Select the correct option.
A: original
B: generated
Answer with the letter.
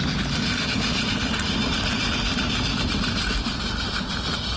A